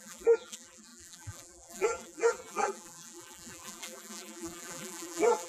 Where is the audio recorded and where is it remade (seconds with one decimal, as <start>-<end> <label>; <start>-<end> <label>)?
0.0-5.5 remade